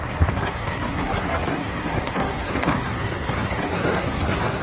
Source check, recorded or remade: remade